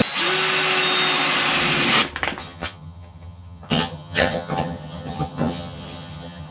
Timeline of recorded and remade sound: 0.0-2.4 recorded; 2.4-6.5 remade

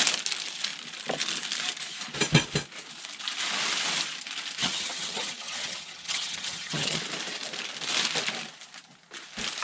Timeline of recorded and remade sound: 0.0-4.6 recorded; 4.6-7.0 remade; 7.0-9.6 recorded

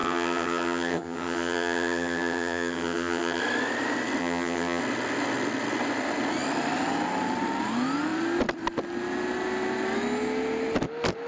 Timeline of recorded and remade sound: 0.0-3.4 remade; 3.4-4.2 recorded; 4.2-4.8 remade; 4.8-11.3 recorded

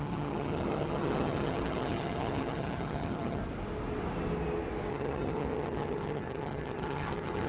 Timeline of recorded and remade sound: 0.0-3.4 remade; 3.4-4.9 recorded; 4.9-7.5 remade

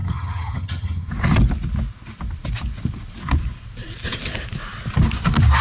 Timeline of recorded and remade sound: 0.0-1.1 remade; 1.1-5.6 recorded

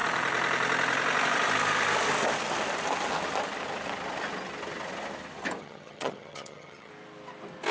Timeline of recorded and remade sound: 0.0-5.6 recorded; 5.6-6.9 remade; 6.9-7.7 recorded